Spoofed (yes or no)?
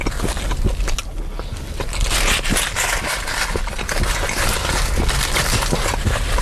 no